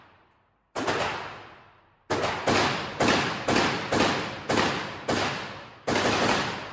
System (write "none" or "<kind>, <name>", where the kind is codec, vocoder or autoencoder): none